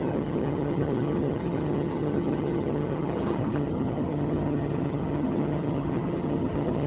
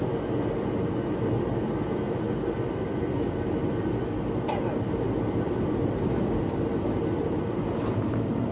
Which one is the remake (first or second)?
first